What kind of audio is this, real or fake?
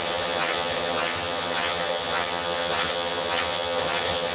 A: fake